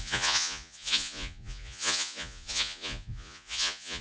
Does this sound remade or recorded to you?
remade